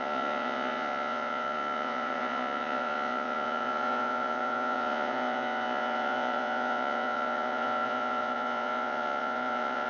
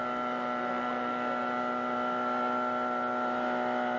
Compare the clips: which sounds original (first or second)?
second